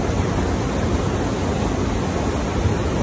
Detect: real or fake real